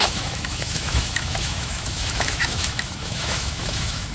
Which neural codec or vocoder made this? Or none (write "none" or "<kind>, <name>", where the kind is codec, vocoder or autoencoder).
autoencoder, DAC-VAE